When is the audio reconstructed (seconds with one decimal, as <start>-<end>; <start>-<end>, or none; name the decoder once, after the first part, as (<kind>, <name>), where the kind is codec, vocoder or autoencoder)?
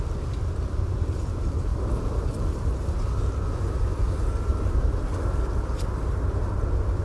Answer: none